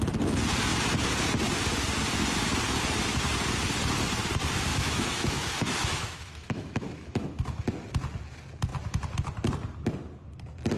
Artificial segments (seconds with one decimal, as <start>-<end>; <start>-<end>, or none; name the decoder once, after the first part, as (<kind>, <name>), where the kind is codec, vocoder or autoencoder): 4.7-7.4 (autoencoder, DAC-VAE)